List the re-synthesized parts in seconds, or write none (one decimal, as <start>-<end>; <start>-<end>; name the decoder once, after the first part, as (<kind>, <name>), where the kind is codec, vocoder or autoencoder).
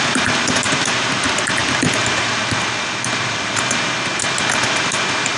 none